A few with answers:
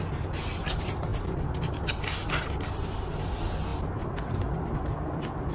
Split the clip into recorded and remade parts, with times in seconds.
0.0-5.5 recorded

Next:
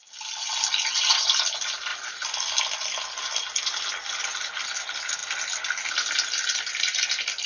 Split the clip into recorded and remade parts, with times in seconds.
0.0-7.5 recorded

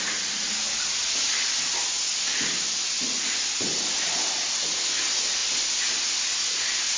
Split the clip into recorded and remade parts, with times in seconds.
0.0-7.0 recorded

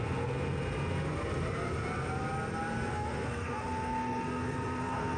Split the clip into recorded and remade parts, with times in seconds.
0.0-2.9 recorded; 2.9-5.2 remade

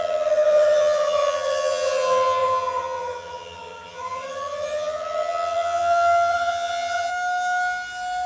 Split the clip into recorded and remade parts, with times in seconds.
0.0-7.1 remade; 7.1-8.3 recorded

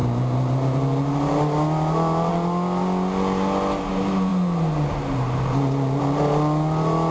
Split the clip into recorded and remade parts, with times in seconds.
0.0-7.1 recorded